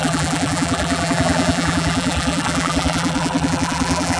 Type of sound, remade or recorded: remade